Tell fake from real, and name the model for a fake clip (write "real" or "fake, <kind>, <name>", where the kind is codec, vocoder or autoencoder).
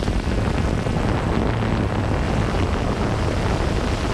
real